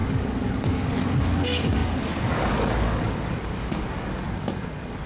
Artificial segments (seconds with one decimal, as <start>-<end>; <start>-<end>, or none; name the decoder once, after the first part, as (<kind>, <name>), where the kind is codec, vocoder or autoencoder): 0.0-5.1 (codec, DAC)